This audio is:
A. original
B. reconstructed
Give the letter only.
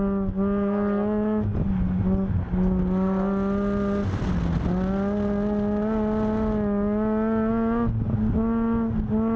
A